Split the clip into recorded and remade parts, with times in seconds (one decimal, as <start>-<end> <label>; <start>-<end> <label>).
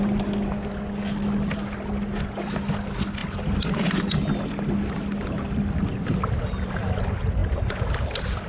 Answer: 0.0-8.5 recorded